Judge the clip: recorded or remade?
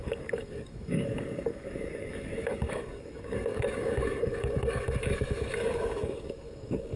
remade